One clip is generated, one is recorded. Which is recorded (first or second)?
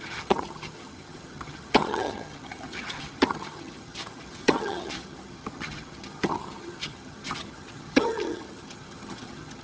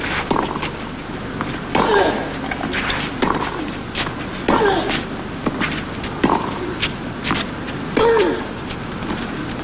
second